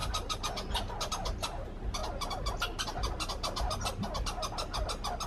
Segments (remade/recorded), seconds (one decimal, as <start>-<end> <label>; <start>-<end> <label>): 0.0-1.1 recorded; 1.1-2.0 remade; 2.0-5.3 recorded

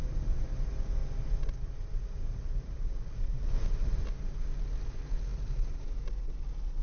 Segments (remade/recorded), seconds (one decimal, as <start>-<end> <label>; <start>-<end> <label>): 0.0-1.0 recorded; 1.0-4.5 remade; 4.5-6.8 recorded